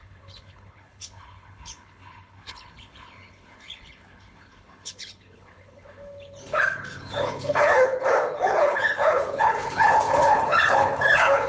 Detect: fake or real fake